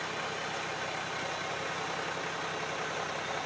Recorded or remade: recorded